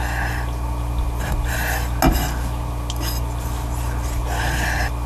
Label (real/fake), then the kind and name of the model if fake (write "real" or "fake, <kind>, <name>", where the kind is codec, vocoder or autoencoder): real